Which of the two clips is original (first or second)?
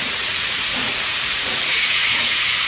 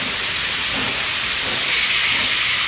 second